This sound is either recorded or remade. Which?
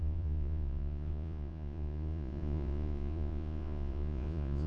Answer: remade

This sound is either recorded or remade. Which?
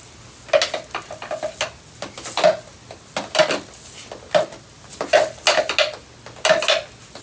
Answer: recorded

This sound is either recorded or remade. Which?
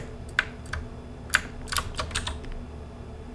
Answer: recorded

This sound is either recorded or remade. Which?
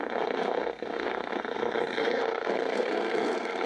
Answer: remade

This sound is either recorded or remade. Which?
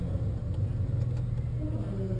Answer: recorded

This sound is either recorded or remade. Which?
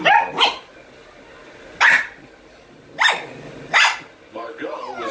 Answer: recorded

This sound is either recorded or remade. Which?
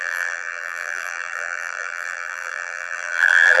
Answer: remade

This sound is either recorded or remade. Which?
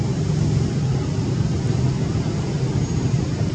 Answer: recorded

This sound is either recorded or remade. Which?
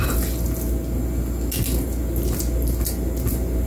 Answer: recorded